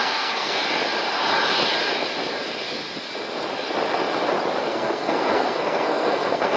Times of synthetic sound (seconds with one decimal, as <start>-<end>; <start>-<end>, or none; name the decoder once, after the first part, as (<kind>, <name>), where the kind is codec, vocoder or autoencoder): 0.0-0.6 (codec, SNAC); 4.6-6.6